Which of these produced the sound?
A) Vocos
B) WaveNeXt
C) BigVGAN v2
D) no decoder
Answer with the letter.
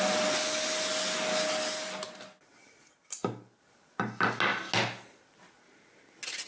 D